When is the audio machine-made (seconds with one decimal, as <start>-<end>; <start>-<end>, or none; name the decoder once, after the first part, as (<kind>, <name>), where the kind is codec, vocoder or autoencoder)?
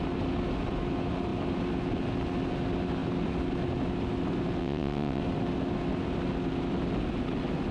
4.6-5.2 (vocoder, WaveNeXt)